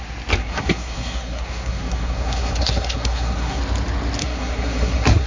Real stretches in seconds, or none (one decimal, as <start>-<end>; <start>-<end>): 0.0-0.4; 3.6-4.2